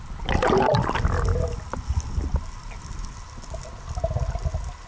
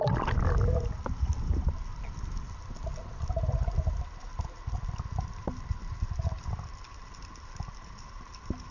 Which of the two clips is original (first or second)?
first